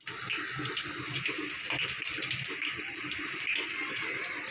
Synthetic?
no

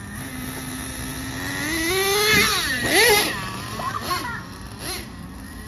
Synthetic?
no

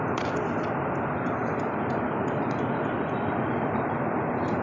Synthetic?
yes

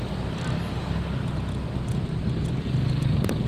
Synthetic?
no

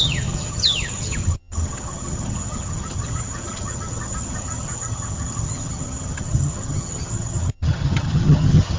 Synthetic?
yes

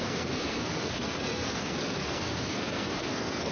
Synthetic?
yes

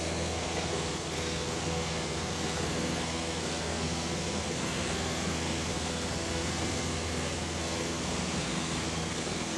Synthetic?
yes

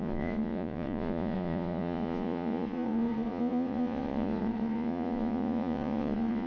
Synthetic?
yes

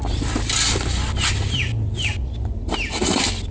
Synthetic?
no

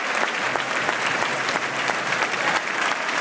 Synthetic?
yes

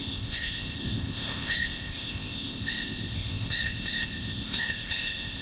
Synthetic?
yes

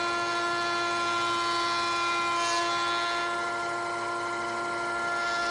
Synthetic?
no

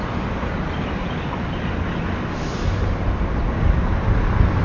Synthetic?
no